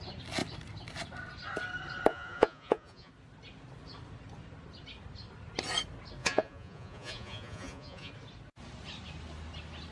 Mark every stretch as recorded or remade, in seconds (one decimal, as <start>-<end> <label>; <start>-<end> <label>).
0.0-2.1 recorded; 2.1-3.1 remade; 3.1-6.2 recorded; 6.2-8.1 remade; 8.1-9.9 recorded